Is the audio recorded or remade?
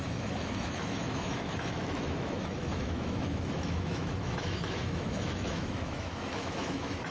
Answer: remade